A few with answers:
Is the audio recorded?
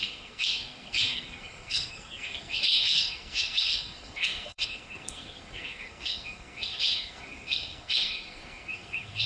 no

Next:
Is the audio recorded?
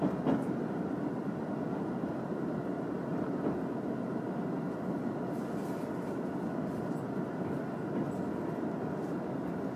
yes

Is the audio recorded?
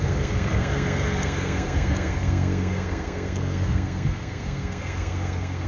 no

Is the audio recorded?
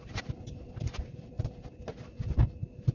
yes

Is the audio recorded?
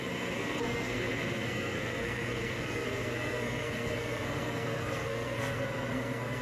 no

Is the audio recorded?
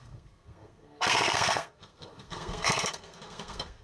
no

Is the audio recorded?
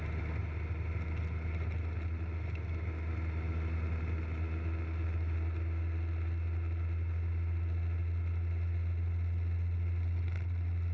yes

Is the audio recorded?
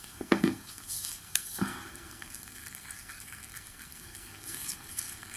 no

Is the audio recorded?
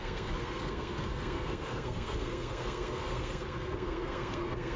no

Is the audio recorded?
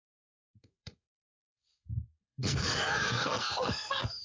no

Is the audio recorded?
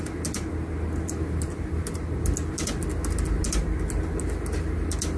yes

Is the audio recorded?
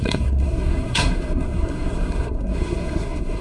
no